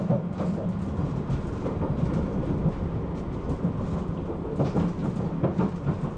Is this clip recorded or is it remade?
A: recorded